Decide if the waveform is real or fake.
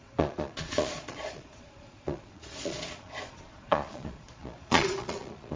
fake